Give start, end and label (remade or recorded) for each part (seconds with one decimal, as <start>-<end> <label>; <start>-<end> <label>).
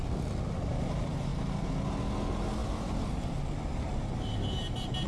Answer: 0.0-5.1 recorded